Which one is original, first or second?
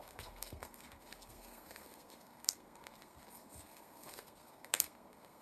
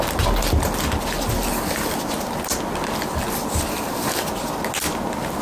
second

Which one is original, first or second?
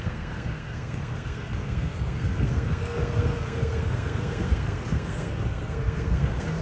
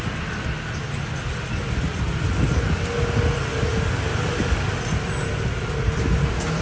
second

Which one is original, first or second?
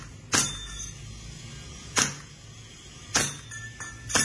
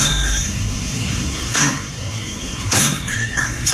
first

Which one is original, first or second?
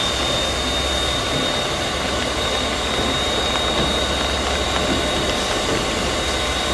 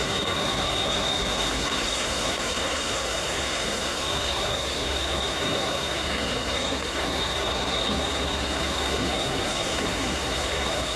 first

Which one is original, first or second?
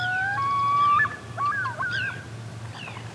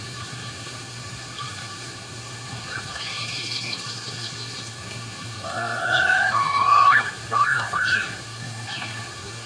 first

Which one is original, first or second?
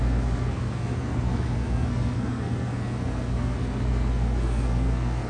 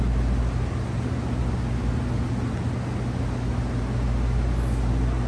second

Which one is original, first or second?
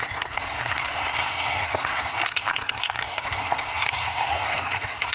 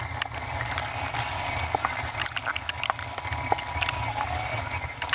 second